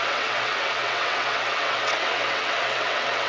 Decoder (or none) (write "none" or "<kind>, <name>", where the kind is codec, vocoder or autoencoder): vocoder, WaveNeXt